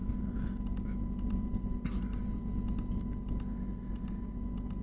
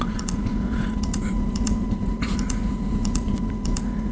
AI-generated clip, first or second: second